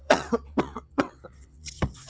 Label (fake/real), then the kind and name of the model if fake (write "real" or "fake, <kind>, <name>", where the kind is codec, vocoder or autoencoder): fake, vocoder, WaveNeXt